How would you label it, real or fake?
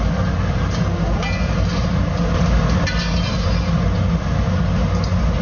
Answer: real